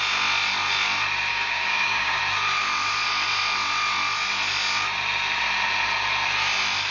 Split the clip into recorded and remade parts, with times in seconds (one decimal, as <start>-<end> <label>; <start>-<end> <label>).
0.0-1.3 recorded; 1.3-2.2 remade; 2.2-6.9 recorded